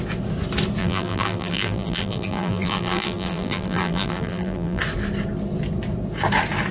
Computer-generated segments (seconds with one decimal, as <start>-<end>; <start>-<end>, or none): 0.8-4.8